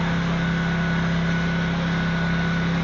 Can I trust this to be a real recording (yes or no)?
yes